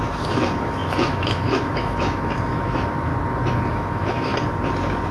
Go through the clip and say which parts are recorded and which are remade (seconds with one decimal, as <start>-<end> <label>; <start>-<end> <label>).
0.0-3.1 remade; 3.1-3.7 recorded; 3.7-4.3 remade; 4.3-5.1 recorded